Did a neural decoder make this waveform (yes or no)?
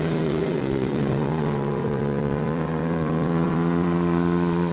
yes